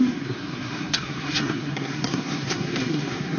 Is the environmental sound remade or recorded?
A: remade